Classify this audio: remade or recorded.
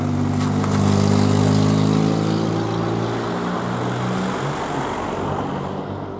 recorded